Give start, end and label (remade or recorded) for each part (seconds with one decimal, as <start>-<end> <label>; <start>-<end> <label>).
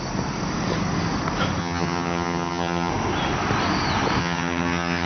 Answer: 0.0-1.6 recorded; 1.6-2.9 remade; 2.9-4.2 recorded; 4.2-5.1 remade